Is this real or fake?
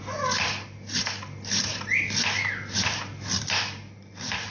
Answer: real